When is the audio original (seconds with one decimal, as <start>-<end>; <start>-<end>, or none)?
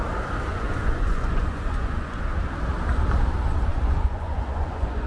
0.0-0.5; 2.2-3.7